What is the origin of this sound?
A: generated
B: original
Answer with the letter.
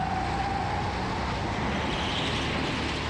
B